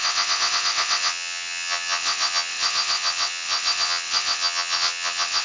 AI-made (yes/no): yes